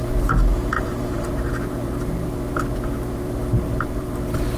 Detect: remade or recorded remade